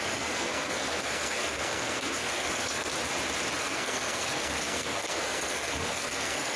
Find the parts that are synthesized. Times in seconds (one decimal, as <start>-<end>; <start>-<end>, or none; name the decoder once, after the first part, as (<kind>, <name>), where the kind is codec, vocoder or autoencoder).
0.0-2.9 (codec, SNAC); 3.6-6.6